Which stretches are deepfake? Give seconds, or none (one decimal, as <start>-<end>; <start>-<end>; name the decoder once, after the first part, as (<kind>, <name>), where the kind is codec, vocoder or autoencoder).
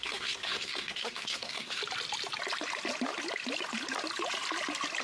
0.0-1.8 (codec, SNAC)